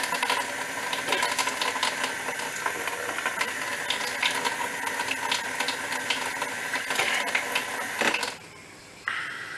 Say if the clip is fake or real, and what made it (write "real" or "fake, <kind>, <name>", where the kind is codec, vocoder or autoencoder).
real